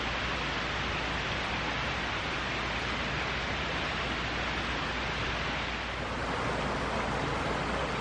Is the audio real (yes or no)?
yes